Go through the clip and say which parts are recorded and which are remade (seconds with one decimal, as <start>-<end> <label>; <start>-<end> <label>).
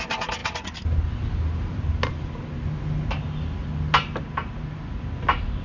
0.0-5.6 recorded